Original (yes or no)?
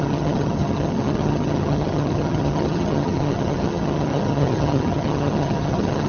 no